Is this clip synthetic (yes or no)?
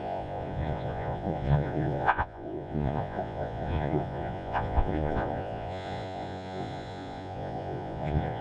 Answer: yes